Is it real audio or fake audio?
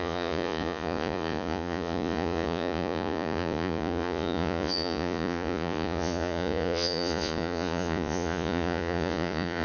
fake